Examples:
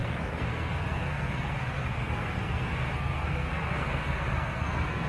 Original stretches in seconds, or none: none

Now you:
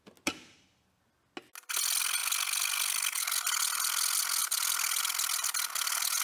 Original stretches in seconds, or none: 0.0-6.2

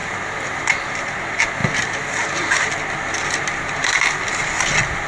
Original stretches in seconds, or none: 0.0-5.1

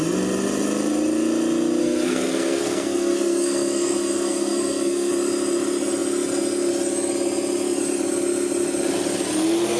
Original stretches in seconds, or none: 0.0-1.8; 5.1-9.8